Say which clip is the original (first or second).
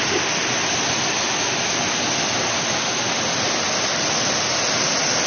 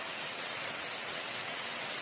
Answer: first